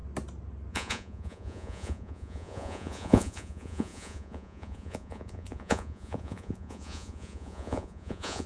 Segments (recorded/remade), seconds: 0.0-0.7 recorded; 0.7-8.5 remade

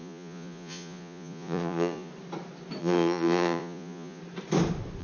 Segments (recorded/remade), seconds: 0.0-2.1 remade; 2.1-2.8 recorded; 2.8-4.2 remade; 4.2-5.0 recorded